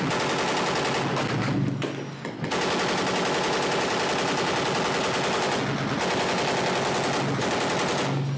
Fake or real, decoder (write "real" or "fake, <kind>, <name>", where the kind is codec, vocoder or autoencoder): real